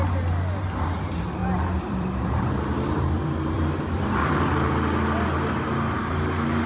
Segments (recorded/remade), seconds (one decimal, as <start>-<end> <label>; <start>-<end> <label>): 0.0-1.4 recorded; 1.4-4.5 remade; 4.5-6.7 recorded